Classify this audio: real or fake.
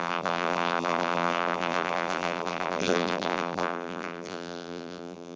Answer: fake